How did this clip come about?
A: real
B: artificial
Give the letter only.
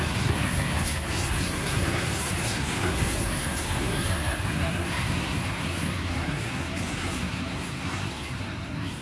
B